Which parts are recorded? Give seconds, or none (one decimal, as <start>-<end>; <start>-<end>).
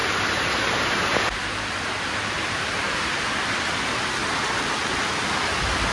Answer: 3.5-4.2; 4.9-5.9